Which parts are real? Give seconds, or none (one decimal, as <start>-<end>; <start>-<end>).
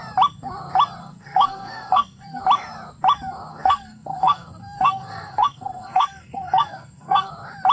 0.0-1.0; 2.4-3.5; 7.3-7.7